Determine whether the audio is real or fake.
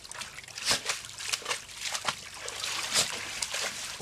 real